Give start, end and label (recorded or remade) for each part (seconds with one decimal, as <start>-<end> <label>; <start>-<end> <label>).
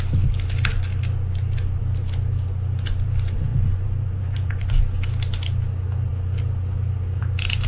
0.0-3.5 recorded; 3.5-4.8 remade; 4.8-7.7 recorded